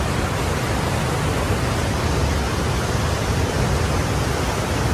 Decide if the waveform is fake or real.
real